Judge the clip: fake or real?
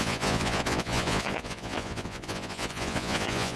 fake